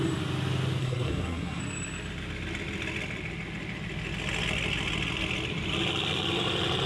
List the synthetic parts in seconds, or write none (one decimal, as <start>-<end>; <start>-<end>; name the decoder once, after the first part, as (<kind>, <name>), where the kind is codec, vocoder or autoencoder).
0.8-1.6 (codec, SNAC)